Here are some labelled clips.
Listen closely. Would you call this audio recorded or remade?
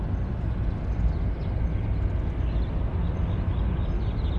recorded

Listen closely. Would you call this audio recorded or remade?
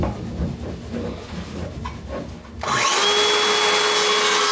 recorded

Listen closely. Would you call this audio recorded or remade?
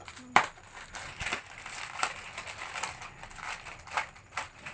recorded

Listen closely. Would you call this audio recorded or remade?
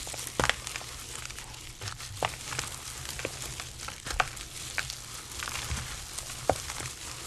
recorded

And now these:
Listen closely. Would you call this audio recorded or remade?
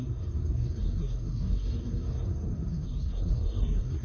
remade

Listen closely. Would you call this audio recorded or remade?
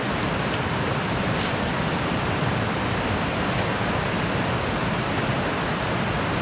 recorded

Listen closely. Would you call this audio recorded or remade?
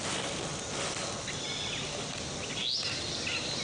recorded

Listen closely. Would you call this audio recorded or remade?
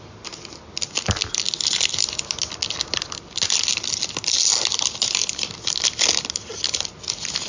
recorded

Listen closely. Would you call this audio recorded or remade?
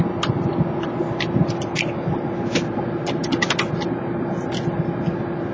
recorded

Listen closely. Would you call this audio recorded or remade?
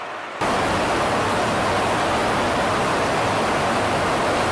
recorded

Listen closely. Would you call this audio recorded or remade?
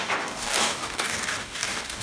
remade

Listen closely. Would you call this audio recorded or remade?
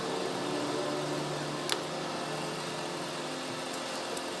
recorded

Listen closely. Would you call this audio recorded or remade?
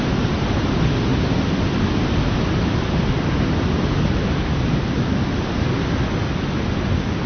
recorded